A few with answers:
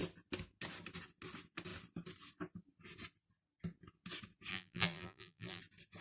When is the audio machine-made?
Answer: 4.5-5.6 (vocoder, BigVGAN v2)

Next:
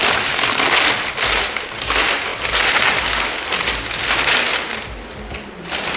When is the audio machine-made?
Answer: none